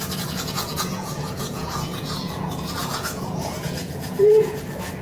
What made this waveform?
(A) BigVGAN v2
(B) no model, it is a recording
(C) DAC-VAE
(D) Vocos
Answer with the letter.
D